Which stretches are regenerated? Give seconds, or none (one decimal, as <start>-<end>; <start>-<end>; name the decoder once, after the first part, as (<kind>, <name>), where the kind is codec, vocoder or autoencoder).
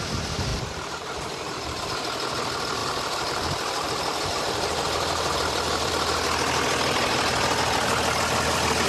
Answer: 0.5-1.8 (vocoder, BigVGAN v2); 2.8-5.9